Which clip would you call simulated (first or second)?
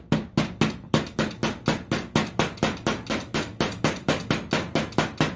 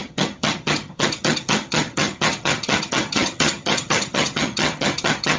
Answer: second